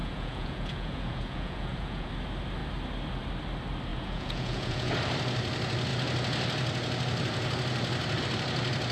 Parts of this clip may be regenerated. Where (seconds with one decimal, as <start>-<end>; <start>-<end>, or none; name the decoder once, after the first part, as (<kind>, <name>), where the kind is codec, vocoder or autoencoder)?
0.0-2.1 (vocoder, Vocos); 3.9-4.9